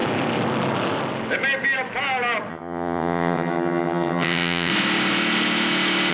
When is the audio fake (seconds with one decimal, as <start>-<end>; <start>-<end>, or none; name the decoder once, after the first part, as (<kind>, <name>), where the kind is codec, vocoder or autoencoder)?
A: 2.5-4.7 (vocoder, HiFi-GAN)